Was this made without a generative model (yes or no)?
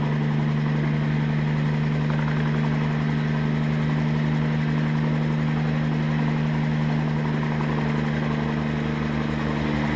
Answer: yes